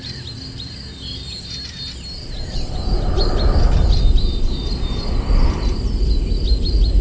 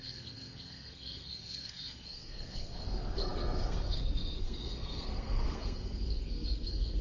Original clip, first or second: first